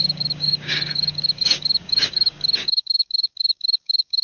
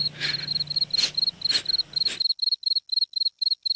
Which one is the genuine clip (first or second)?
second